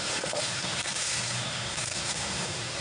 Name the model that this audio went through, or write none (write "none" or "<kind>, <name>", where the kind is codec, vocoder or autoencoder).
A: codec, SNAC